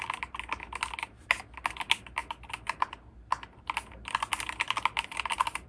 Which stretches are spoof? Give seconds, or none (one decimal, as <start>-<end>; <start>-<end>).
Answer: none